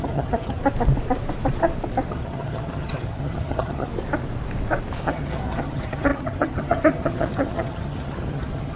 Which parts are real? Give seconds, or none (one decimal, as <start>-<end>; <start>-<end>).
0.6-2.1; 3.9-5.0